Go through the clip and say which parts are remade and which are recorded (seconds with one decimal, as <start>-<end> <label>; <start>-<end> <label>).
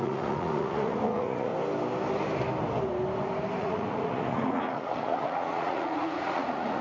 0.0-1.5 remade; 1.5-3.6 recorded; 3.6-6.8 remade